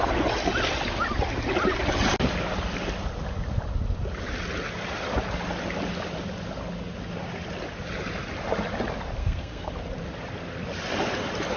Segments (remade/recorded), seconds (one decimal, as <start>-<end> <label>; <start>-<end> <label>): 0.0-9.2 recorded; 9.2-9.7 remade; 9.7-11.6 recorded